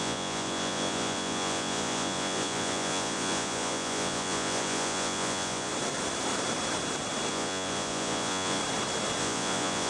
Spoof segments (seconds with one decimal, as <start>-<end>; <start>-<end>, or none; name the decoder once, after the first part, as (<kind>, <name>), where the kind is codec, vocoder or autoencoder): 0.0-5.7 (vocoder, Vocos); 7.3-8.6; 9.2-9.9